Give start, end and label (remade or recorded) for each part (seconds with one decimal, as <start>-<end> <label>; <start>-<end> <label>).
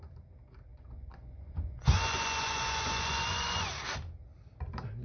0.0-0.7 recorded; 0.7-3.7 remade; 3.7-5.0 recorded